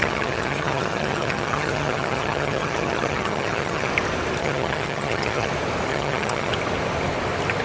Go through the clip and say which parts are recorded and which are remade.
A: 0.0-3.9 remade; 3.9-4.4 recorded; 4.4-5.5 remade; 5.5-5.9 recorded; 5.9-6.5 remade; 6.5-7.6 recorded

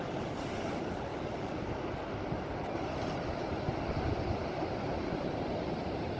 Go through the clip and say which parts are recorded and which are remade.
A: 0.0-6.2 recorded

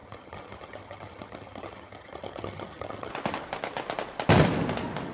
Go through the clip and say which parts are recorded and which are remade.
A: 0.0-3.1 remade; 3.1-5.1 recorded

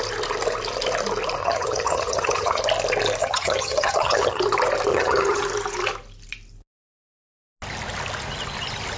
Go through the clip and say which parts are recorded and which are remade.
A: 0.0-1.4 recorded; 1.4-2.6 remade; 2.6-3.2 recorded; 3.2-4.4 remade; 4.4-4.9 recorded; 4.9-5.4 remade; 5.4-9.0 recorded

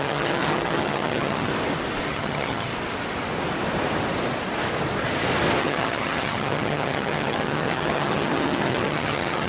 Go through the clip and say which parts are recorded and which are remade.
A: 0.0-1.5 remade; 1.5-2.1 recorded; 2.1-2.7 remade; 2.7-5.6 recorded; 5.6-9.5 remade

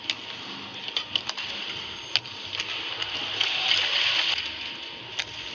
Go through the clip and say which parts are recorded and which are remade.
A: 0.0-5.5 recorded

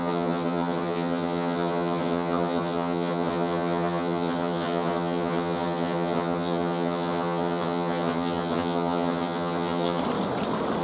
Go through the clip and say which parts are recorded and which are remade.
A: 0.0-10.0 remade; 10.0-10.8 recorded

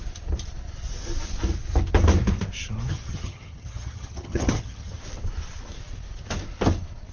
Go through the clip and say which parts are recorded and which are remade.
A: 0.0-2.9 recorded; 2.9-5.0 remade; 5.0-7.1 recorded